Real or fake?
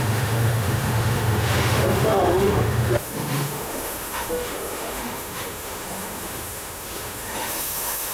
fake